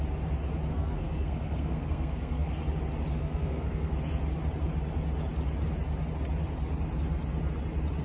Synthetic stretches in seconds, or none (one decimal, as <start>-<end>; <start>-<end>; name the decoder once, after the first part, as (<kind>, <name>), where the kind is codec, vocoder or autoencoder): 0.7-2.5 (codec, SNAC); 3.2-3.9